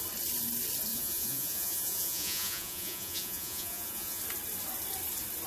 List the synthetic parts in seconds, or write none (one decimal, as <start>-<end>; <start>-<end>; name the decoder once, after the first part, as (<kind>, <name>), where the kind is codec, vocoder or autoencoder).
0.9-4.2 (vocoder, Vocos)